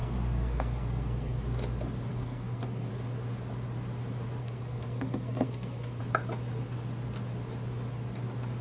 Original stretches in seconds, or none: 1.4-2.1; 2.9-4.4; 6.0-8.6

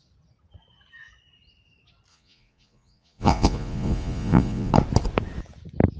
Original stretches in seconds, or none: 0.0-2.1; 4.7-6.0

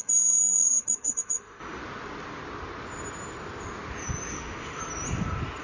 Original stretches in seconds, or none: 1.8-4.3; 4.8-5.6

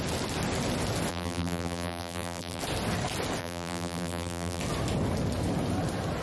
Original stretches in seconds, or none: 0.0-1.1; 2.6-3.4; 4.6-6.2

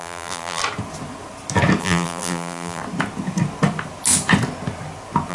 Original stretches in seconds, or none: 0.6-1.8; 2.8-5.3